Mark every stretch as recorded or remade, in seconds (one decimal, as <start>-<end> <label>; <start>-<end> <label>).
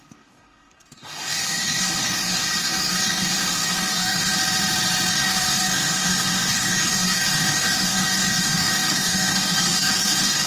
0.0-4.3 remade; 4.3-5.1 recorded; 5.1-10.5 remade